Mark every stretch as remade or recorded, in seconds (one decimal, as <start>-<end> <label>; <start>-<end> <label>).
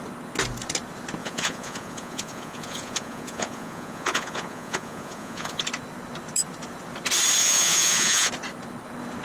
0.0-1.2 recorded; 1.2-5.6 remade; 5.6-7.4 recorded; 7.4-8.3 remade; 8.3-9.2 recorded